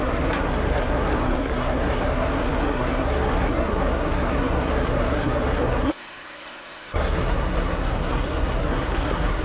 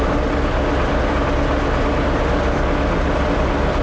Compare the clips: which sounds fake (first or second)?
first